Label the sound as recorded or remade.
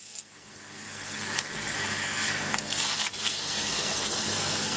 remade